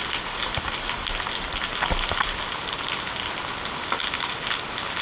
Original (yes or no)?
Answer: yes